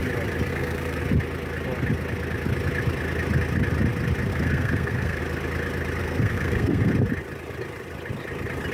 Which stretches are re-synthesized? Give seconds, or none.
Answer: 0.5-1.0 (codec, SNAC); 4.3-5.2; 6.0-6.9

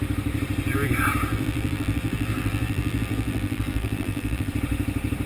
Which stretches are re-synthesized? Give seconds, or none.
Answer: 1.3-4.5 (vocoder, BigVGAN v2)

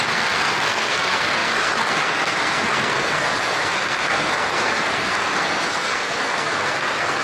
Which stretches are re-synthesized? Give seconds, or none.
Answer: 0.0-7.2 (codec, SNAC)

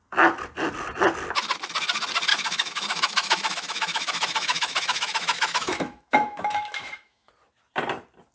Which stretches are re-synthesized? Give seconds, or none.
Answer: 2.3-7.3 (autoencoder, DAC-VAE)

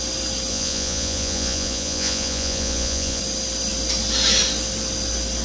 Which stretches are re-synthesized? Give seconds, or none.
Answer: 0.5-3.2 (vocoder, Vocos)